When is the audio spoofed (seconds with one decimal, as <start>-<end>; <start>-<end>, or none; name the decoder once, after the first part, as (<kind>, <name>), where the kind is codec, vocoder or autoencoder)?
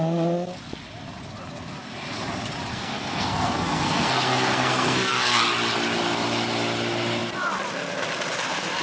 2.7-5.4 (codec, SNAC)